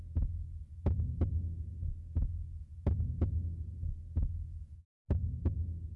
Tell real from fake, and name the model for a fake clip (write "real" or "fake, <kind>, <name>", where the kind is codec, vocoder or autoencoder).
real